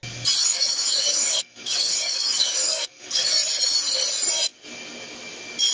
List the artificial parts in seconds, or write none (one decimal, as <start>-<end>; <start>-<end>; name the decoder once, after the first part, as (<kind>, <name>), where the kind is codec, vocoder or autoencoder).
0.4-3.3 (codec, DAC)